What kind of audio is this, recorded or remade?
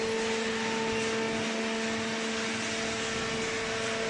recorded